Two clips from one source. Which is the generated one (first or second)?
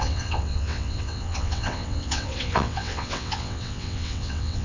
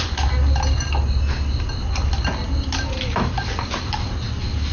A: first